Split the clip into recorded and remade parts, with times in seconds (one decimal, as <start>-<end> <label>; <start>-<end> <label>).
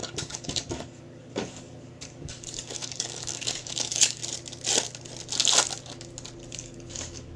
0.0-4.2 remade; 4.2-6.5 recorded; 6.5-7.4 remade